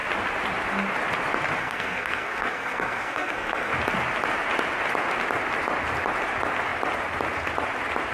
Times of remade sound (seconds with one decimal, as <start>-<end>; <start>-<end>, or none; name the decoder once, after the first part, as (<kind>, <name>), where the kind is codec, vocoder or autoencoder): 1.6-3.7 (codec, SNAC)